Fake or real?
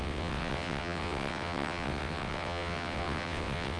fake